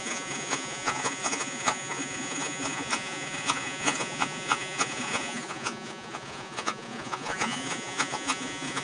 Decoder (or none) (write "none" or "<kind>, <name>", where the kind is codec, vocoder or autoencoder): vocoder, Vocos